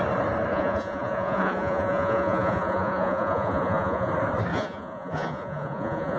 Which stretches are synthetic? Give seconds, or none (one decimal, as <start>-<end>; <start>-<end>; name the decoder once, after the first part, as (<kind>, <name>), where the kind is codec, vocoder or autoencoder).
0.5-4.1 (vocoder, Vocos); 4.5-6.2